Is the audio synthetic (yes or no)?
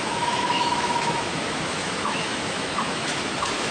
yes